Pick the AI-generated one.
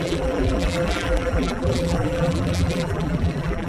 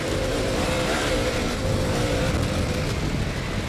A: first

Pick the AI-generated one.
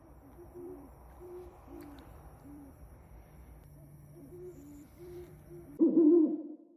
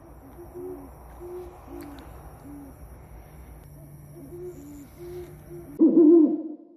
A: first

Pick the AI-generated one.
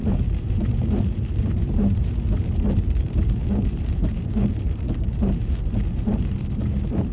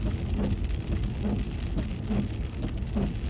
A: first